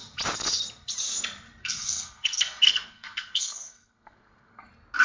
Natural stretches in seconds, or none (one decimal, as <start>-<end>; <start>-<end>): 0.0-1.6; 4.6-5.0